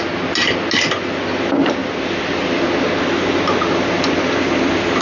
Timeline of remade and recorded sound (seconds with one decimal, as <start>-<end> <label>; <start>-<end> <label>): 0.0-5.0 recorded